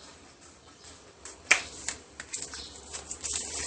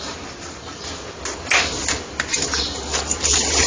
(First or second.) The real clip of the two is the second